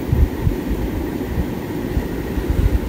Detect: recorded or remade recorded